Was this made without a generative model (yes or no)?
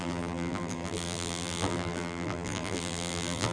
no